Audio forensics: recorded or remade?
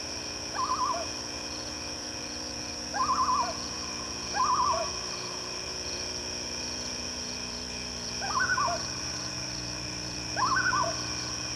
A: remade